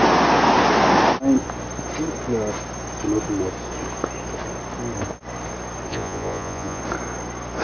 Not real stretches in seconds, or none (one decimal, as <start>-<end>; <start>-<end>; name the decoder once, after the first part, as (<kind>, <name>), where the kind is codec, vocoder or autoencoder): 5.9-6.8 (vocoder, Vocos)

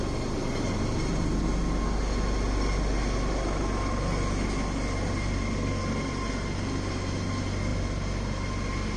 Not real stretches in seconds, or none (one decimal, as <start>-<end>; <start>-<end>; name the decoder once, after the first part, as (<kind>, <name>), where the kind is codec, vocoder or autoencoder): 0.4-1.4 (vocoder, BigVGAN v2)

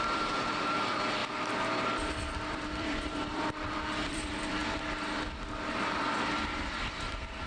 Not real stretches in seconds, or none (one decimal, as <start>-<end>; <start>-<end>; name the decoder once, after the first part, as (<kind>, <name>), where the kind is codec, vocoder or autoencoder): 0.0-1.2 (vocoder, BigVGAN v2); 2.3-4.6; 5.3-7.5

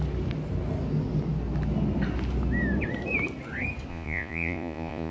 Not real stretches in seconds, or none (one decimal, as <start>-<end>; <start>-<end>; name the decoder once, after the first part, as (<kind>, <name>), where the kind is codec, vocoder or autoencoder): 3.9-5.1 (vocoder, Vocos)

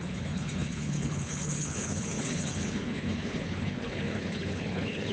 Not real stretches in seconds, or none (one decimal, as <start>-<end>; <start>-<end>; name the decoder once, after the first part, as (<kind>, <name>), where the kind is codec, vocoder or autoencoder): 0.0-5.1 (codec, HILCodec)